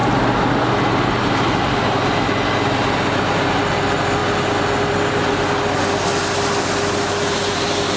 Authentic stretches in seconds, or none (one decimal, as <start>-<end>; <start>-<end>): 0.0-8.0